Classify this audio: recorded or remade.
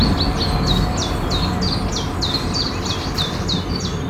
recorded